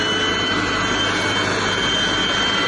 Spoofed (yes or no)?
no